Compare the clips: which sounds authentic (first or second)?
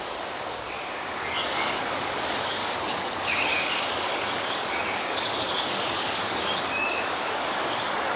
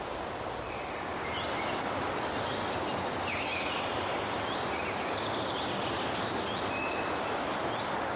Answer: second